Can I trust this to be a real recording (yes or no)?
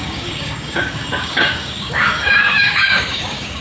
no